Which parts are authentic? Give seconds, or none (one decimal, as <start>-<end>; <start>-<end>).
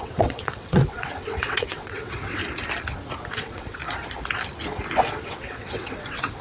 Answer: 2.4-3.3; 3.8-5.2